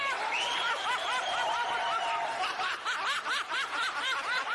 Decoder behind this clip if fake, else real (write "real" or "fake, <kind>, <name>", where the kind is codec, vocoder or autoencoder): fake, vocoder, BigVGAN v2